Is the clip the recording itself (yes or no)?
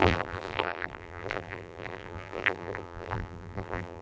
no